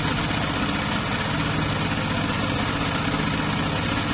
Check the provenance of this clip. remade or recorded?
recorded